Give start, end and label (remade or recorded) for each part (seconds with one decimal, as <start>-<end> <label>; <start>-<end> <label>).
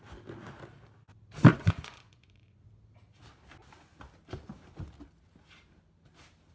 0.0-1.5 recorded; 1.5-2.6 remade; 2.6-6.5 recorded